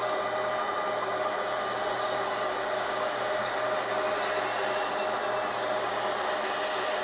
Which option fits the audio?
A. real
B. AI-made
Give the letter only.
A